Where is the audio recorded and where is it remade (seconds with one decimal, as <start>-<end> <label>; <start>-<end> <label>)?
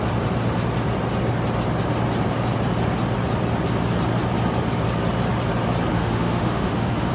0.0-5.9 recorded; 5.9-7.1 remade